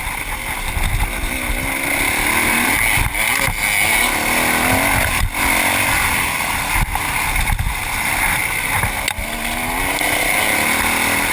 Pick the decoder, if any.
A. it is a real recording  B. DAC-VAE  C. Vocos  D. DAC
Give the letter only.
A